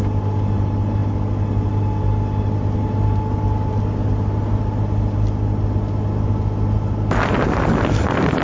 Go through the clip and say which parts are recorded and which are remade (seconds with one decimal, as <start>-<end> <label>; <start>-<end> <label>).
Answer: 0.0-8.4 recorded